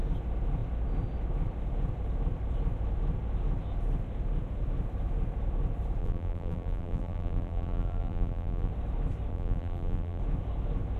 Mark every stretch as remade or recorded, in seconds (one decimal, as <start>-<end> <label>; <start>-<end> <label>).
0.0-6.0 recorded; 6.0-8.7 remade; 8.7-9.3 recorded; 9.3-10.2 remade; 10.2-11.0 recorded